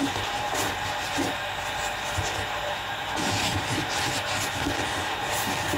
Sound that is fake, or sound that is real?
real